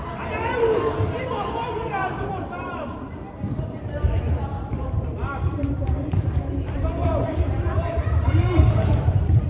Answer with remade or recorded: remade